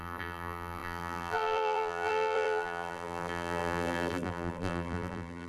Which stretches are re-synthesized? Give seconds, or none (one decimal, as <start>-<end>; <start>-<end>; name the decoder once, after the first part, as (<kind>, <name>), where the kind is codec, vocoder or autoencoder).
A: 0.0-5.5 (vocoder, BigVGAN v2)